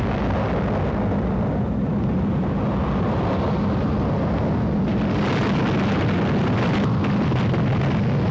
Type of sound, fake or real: real